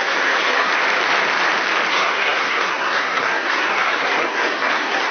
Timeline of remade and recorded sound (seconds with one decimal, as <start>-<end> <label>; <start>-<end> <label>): 0.0-0.7 remade; 0.7-1.9 recorded; 1.9-5.1 remade